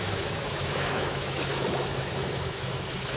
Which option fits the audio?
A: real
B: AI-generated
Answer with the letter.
B